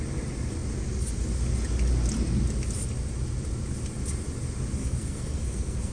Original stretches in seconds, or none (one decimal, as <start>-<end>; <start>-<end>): 0.0-4.8